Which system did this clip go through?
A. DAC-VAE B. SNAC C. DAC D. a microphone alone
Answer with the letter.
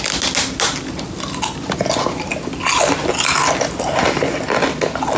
D